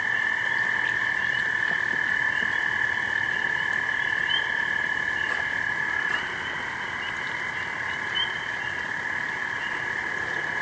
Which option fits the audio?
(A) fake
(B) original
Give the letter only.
B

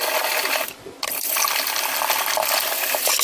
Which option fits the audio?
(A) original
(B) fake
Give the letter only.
A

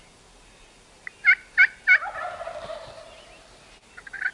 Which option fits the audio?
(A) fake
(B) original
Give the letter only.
B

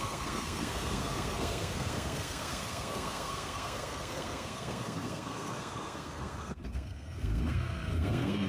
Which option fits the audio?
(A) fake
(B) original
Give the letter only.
A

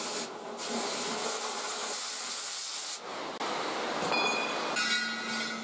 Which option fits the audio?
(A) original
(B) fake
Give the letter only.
A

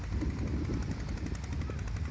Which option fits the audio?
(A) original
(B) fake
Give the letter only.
A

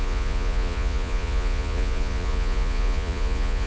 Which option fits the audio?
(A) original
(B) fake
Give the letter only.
B